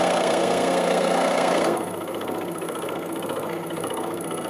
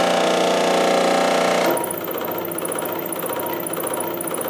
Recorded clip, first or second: second